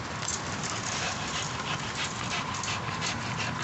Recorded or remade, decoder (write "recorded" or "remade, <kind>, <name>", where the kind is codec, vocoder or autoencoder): recorded